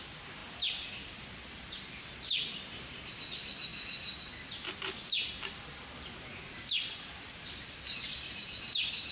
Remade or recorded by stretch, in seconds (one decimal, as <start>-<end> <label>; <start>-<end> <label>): 0.0-9.1 recorded